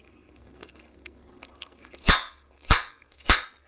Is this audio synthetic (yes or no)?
yes